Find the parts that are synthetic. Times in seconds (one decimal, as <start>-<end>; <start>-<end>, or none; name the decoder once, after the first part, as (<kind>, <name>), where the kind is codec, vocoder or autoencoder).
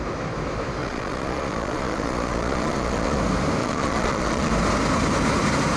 0.8-3.2 (vocoder, Vocos); 3.6-4.5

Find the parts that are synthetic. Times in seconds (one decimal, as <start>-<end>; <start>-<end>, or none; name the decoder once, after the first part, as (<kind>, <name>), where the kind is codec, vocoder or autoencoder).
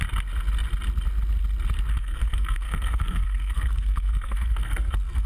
1.9-5.3 (codec, SNAC)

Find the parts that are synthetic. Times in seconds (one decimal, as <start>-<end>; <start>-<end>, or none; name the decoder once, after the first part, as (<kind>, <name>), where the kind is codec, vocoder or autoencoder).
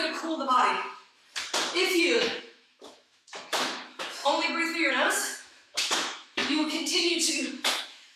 0.0-1.2 (autoencoder, DAC-VAE); 2.0-4.2; 4.9-8.2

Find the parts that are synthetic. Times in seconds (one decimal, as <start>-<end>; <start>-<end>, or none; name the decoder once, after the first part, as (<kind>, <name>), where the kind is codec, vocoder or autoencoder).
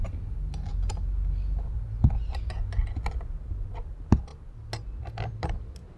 none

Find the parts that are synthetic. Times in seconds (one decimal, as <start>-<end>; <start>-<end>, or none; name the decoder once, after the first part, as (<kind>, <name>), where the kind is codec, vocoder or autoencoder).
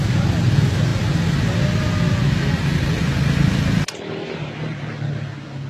none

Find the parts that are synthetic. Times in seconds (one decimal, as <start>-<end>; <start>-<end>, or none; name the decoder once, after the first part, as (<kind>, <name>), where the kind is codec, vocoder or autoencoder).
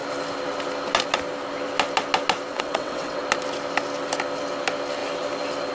2.5-3.2 (vocoder, WaveNeXt)